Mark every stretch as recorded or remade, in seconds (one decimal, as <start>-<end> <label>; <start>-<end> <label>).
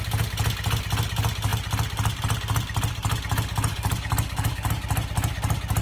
0.0-3.7 recorded; 3.7-4.7 remade; 4.7-5.8 recorded